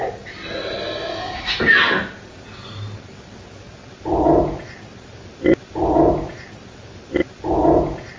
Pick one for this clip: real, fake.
real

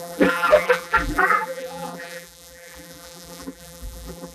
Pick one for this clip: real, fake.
fake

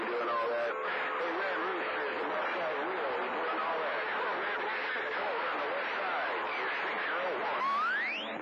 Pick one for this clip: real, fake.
real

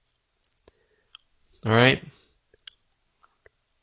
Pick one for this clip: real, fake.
real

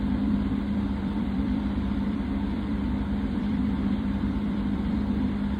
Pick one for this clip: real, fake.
fake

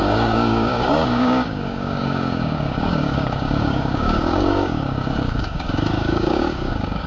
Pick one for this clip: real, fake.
fake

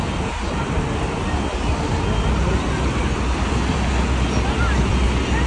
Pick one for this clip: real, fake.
real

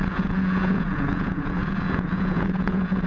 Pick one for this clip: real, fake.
fake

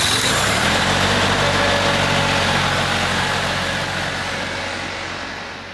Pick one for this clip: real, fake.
real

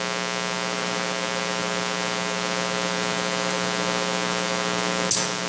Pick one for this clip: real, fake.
real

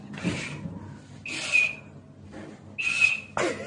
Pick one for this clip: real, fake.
real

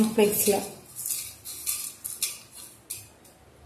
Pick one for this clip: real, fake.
real